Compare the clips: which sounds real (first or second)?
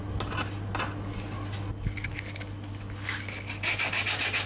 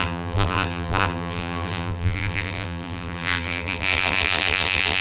first